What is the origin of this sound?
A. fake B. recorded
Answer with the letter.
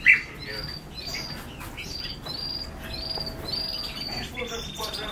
B